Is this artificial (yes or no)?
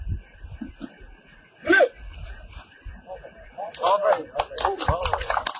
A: no